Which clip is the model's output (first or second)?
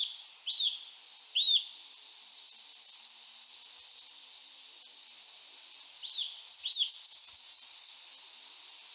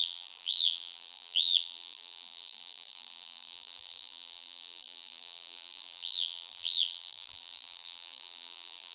second